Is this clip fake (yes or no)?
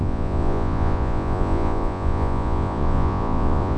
yes